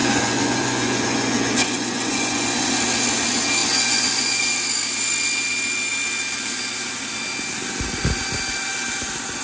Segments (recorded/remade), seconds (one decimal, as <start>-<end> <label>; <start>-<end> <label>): 0.0-2.7 remade; 2.7-3.6 recorded; 3.6-4.4 remade; 4.4-9.4 recorded